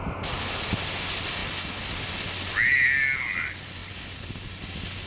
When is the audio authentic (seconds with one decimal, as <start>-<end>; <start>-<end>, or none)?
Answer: 0.0-5.1